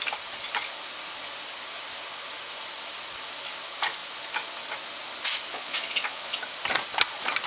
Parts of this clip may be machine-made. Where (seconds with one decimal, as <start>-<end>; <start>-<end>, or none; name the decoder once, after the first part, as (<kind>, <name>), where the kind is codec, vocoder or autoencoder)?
5.5-6.4 (vocoder, Vocos)